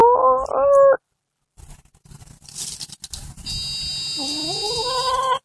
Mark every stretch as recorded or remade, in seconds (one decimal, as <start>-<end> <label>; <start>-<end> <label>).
0.0-5.4 recorded